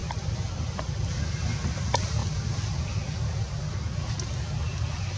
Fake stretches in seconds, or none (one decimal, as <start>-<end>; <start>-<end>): 0.0-1.4; 2.2-3.2